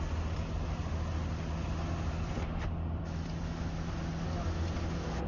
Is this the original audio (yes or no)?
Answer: yes